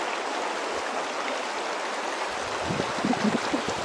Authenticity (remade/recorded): recorded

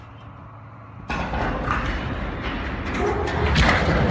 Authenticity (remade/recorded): recorded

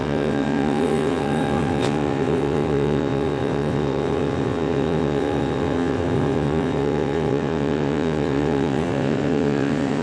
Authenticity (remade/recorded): remade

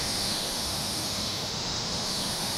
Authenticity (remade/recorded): remade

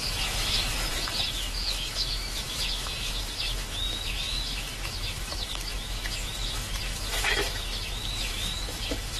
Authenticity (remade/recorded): remade